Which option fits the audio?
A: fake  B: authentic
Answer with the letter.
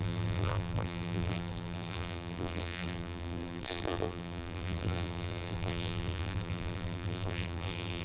A